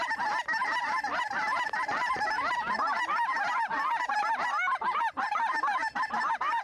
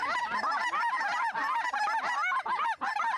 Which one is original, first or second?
second